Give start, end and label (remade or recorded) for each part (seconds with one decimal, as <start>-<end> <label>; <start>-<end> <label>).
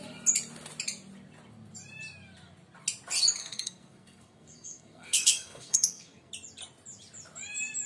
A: 0.0-3.4 recorded; 3.4-6.3 remade; 6.3-7.9 recorded